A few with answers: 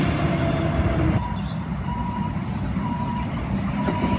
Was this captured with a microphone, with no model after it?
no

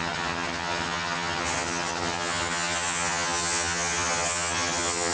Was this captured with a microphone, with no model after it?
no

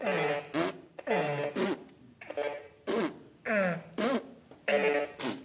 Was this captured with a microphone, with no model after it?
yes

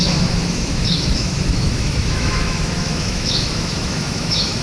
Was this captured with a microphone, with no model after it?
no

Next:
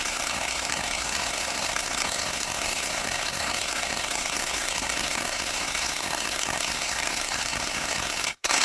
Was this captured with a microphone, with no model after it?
no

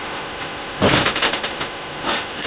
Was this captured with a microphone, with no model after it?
no